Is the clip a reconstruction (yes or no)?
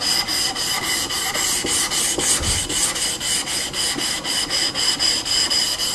no